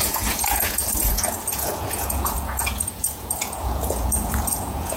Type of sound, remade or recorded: remade